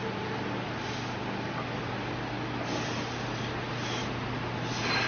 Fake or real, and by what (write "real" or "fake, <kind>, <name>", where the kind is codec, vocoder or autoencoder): real